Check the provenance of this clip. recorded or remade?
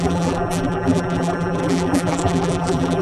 remade